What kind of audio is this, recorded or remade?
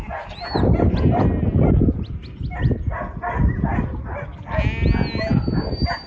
recorded